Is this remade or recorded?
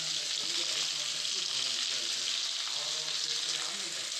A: recorded